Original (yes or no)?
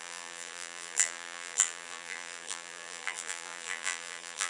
no